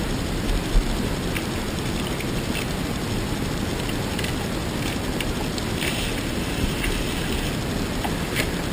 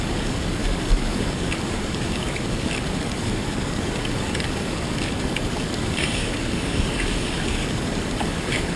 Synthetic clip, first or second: second